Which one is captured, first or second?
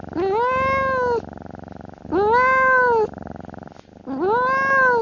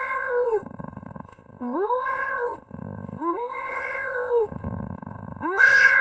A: first